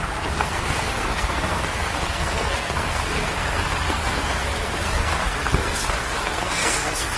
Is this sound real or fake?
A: fake